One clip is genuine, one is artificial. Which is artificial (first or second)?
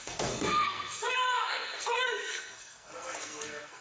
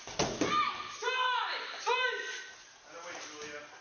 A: first